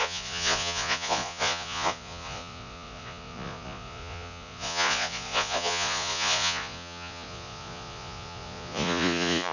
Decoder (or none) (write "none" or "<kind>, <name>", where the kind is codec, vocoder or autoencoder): vocoder, Vocos